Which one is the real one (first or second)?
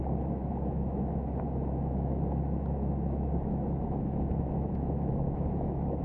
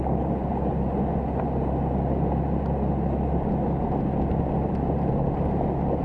second